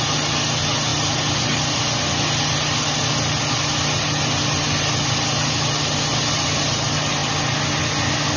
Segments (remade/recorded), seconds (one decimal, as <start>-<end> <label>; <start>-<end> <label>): 0.0-8.4 recorded